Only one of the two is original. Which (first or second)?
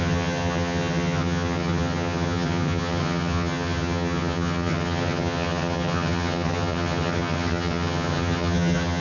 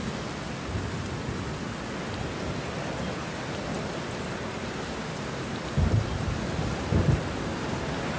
second